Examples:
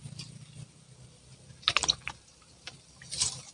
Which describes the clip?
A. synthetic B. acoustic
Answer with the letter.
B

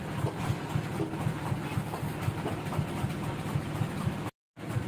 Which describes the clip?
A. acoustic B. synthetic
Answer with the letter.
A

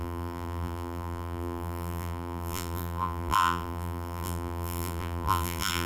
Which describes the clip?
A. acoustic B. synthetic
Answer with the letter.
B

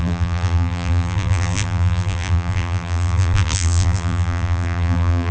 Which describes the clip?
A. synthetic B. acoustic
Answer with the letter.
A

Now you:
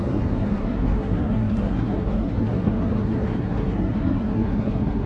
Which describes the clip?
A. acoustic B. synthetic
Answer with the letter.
B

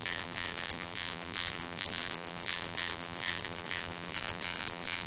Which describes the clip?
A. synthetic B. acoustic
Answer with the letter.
A